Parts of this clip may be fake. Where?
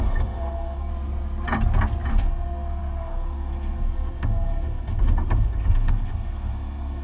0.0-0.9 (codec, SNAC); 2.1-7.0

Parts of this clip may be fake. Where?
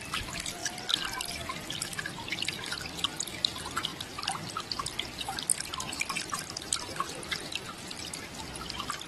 5.5-8.0 (vocoder, BigVGAN v2)